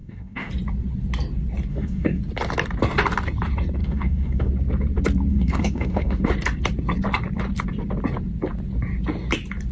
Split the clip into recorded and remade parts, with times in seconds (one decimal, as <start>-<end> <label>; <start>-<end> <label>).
0.0-0.5 remade; 0.5-1.7 recorded; 1.7-2.2 remade; 2.2-3.8 recorded; 3.8-4.5 remade; 4.5-5.3 recorded; 5.3-6.3 remade; 6.3-9.7 recorded